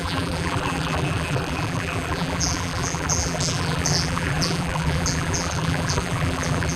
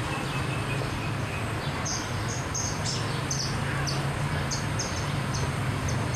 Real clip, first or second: second